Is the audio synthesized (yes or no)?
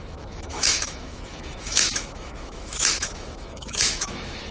yes